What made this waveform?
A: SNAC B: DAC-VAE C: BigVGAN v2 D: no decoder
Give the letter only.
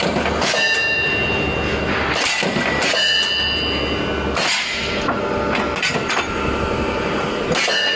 D